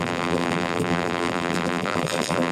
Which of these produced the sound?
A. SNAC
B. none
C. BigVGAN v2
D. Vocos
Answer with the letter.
C